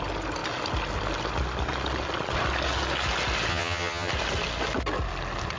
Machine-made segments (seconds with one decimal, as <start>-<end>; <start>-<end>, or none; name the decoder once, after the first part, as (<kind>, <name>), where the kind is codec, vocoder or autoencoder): 3.5-4.1 (vocoder, HiFi-GAN)

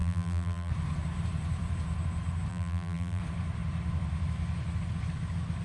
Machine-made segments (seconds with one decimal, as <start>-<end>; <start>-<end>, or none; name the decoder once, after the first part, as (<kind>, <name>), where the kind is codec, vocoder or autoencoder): 0.0-0.7 (vocoder, BigVGAN v2); 2.5-3.2

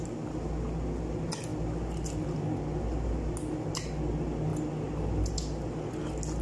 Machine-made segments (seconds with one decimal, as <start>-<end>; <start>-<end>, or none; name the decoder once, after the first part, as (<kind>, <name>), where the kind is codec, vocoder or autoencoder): none